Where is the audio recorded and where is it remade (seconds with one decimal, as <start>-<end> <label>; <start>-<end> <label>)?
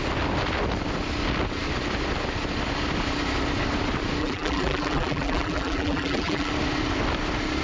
0.0-4.2 recorded; 4.2-6.5 remade; 6.5-7.6 recorded